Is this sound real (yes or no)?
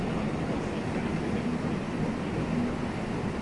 yes